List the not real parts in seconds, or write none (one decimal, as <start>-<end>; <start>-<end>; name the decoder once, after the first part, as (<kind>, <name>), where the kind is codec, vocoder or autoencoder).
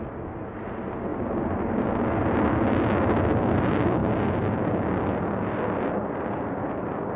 none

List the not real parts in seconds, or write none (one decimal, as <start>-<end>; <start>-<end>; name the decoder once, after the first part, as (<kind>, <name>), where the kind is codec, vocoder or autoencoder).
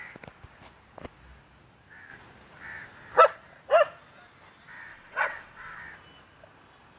4.9-5.8 (vocoder, WaveNeXt)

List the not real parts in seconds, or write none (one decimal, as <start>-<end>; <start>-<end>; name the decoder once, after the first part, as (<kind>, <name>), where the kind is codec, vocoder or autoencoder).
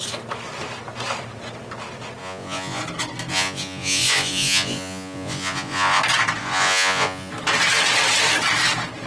2.2-2.8 (vocoder, Vocos); 3.3-6.0; 6.4-7.3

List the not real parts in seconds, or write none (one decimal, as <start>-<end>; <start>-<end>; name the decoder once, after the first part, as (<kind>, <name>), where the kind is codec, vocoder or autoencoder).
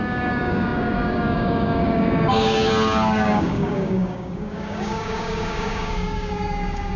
0.0-7.0 (codec, DAC)